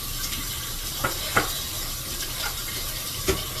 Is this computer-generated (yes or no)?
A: yes